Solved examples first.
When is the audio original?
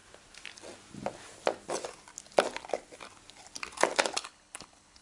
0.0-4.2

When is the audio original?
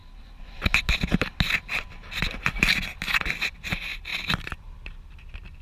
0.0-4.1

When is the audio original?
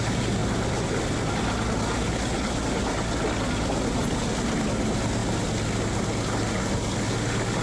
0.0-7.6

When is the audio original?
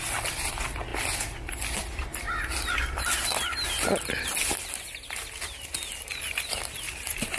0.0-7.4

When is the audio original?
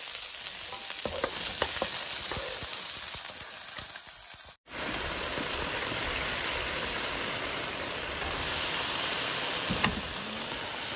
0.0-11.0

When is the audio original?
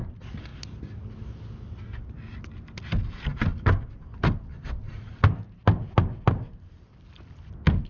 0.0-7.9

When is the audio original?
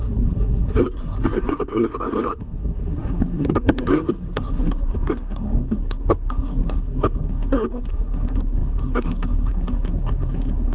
none